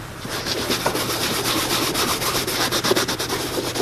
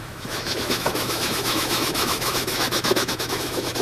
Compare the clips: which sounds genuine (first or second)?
first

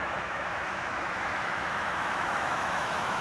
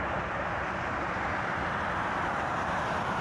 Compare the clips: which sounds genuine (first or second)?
second